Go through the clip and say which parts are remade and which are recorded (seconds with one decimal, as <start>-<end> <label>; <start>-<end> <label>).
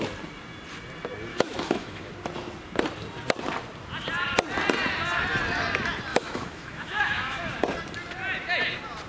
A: 0.0-1.3 recorded; 1.3-2.1 remade; 2.1-6.1 recorded; 6.1-7.4 remade; 7.4-9.1 recorded